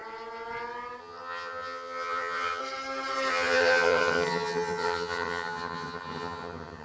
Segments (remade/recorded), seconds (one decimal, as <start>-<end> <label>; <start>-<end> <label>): 0.0-1.0 recorded; 1.0-2.6 remade; 2.6-3.3 recorded; 3.3-6.8 remade